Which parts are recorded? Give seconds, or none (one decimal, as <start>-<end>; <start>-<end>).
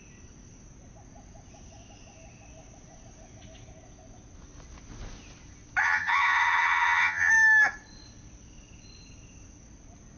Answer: 0.0-5.8; 7.3-10.2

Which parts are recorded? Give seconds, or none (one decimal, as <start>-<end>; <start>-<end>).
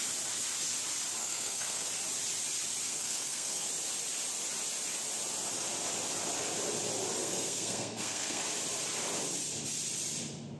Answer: 0.0-1.2; 1.9-2.9; 3.7-7.2; 8.4-10.6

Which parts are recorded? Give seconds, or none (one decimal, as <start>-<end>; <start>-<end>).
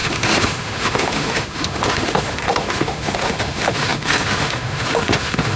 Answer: none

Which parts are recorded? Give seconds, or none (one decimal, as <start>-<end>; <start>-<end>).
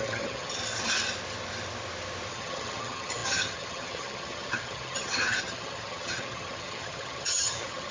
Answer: 0.6-2.3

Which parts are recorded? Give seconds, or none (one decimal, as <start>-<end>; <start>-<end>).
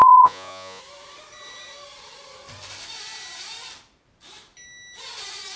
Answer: 0.8-5.6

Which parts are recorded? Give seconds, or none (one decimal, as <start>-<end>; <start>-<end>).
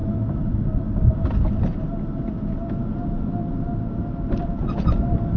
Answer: 0.6-5.4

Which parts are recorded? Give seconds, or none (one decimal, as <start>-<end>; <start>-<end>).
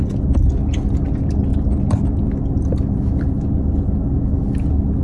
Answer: 0.0-1.5; 4.3-5.0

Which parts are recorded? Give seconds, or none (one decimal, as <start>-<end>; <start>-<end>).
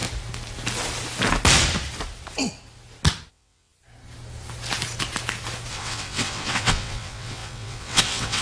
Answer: 0.0-3.3; 3.7-5.7